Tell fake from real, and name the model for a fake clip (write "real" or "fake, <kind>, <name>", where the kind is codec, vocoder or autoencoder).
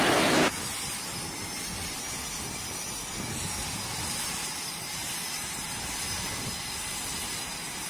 real